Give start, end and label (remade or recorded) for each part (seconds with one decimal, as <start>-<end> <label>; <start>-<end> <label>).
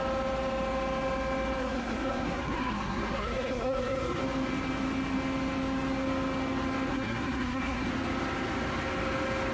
0.0-1.6 recorded; 1.6-4.2 remade; 4.2-6.9 recorded; 6.9-7.9 remade; 7.9-9.5 recorded